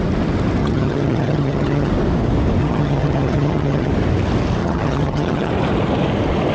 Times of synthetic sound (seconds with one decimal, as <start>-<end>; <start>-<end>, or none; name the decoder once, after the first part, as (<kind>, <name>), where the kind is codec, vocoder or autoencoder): 0.6-1.9 (vocoder, HiFi-GAN); 2.6-3.9; 4.6-5.5